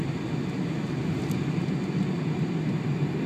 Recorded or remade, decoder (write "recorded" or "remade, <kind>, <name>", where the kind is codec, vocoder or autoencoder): recorded